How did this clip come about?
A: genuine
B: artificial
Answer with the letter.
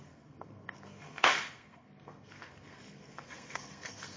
B